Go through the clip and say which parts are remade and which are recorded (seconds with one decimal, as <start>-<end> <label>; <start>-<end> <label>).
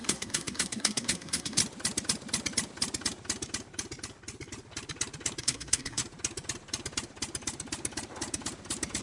0.0-1.6 remade; 1.6-5.4 recorded; 5.4-6.0 remade; 6.0-9.0 recorded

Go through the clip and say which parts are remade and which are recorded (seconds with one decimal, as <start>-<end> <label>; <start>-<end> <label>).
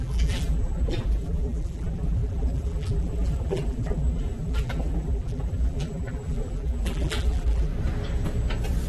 0.0-7.7 remade; 7.7-8.9 recorded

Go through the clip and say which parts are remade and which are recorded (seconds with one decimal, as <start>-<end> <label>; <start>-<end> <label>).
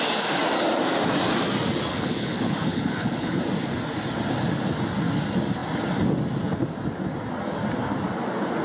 0.0-1.9 recorded; 1.9-3.4 remade; 3.4-8.6 recorded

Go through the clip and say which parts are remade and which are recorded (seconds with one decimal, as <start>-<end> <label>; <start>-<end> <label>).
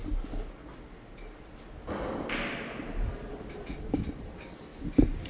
0.0-5.3 recorded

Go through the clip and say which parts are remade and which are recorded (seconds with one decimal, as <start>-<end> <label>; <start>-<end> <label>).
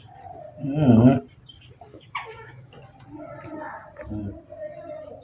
0.0-1.9 recorded; 1.9-2.7 remade; 2.7-5.2 recorded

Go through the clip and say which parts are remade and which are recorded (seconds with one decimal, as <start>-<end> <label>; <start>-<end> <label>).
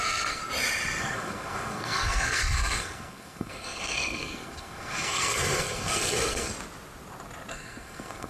0.0-0.4 remade; 0.4-1.0 recorded; 1.0-6.5 remade; 6.5-7.5 recorded; 7.5-8.3 remade